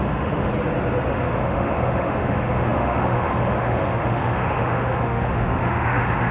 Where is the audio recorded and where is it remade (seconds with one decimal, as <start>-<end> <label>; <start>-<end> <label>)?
0.0-0.5 remade; 0.5-1.1 recorded; 1.1-6.3 remade